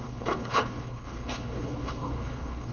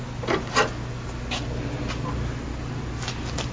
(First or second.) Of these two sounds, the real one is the second